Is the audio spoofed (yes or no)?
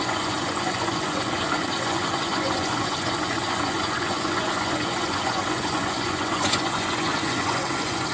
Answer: yes